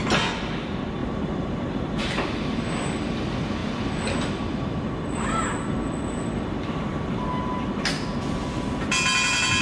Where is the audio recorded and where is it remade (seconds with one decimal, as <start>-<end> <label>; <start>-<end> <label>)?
0.0-1.0 recorded; 1.0-2.2 remade; 2.2-9.6 recorded